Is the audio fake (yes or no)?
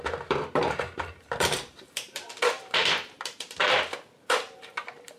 yes